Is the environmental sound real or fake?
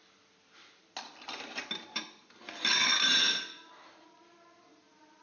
real